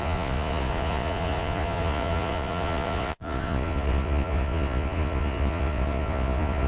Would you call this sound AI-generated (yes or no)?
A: yes